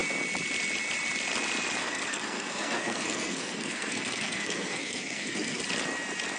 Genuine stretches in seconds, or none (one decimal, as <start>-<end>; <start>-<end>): 0.0-1.8; 5.6-6.4